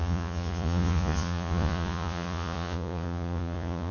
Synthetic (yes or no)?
yes